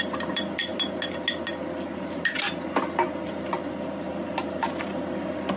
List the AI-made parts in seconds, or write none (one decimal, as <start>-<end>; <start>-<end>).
none